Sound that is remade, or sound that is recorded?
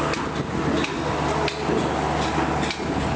recorded